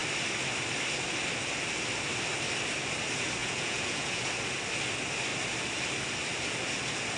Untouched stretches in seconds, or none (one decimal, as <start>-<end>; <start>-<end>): 0.0-3.4; 4.2-7.2